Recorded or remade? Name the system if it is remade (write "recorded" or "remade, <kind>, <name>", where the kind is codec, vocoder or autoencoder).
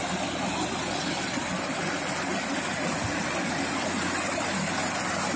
recorded